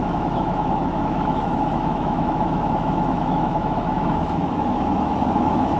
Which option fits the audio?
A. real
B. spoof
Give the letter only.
B